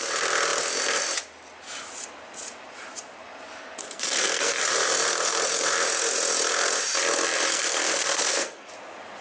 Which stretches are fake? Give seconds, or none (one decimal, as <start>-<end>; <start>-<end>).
3.8-4.6; 7.5-8.7